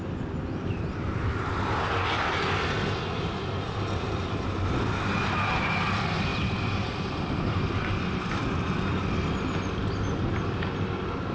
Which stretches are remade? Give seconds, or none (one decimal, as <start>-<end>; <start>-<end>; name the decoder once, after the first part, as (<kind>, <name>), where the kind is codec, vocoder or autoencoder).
6.3-9.3 (vocoder, BigVGAN v2)